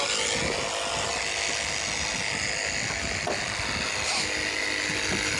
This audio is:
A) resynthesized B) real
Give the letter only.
B